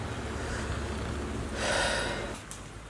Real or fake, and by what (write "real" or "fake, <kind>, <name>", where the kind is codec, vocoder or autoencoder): real